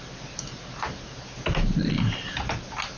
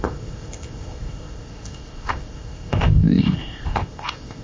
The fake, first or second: second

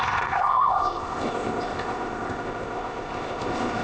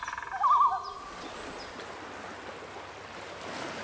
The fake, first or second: first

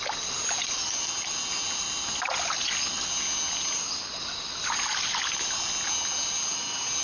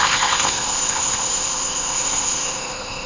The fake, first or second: second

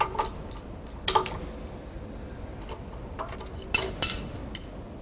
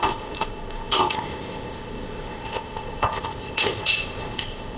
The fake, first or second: second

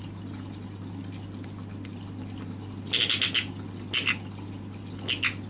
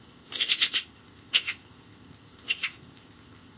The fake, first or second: second